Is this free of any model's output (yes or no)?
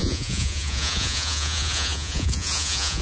no